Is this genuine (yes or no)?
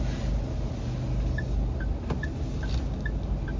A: yes